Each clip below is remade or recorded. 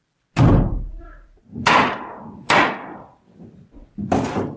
recorded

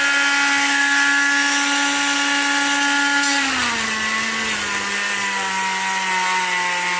recorded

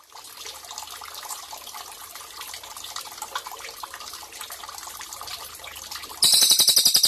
remade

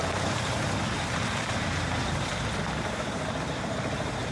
remade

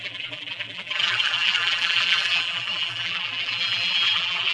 remade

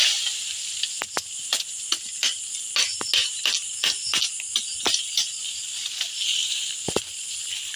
recorded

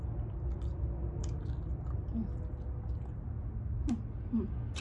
recorded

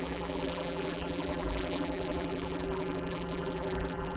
remade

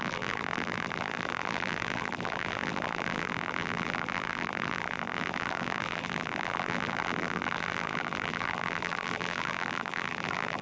remade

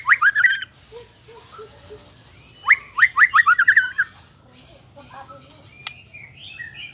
recorded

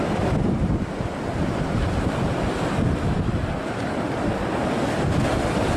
recorded